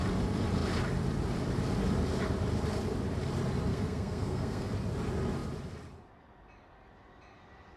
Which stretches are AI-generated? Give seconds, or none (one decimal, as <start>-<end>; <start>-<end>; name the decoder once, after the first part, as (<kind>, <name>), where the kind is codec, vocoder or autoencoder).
3.7-4.7 (codec, SNAC)